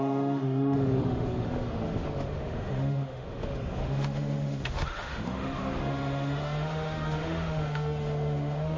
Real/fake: fake